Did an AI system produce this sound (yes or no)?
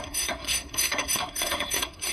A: yes